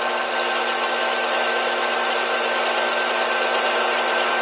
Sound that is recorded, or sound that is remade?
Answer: recorded